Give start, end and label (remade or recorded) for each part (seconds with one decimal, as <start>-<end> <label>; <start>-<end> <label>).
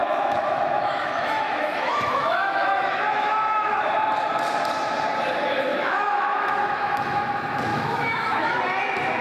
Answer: 0.0-3.9 remade; 3.9-5.7 recorded; 5.7-7.3 remade; 7.3-7.7 recorded; 7.7-8.6 remade; 8.6-9.2 recorded